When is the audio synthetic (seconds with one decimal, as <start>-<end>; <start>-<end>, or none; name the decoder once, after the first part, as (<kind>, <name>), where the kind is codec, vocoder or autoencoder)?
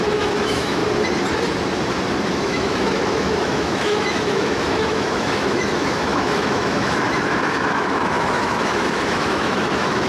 0.0-0.8 (autoencoder, DAC-VAE); 2.3-10.1